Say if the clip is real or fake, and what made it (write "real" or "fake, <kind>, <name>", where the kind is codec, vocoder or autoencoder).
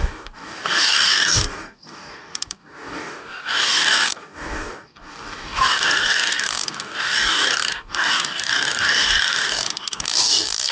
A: fake, codec, DAC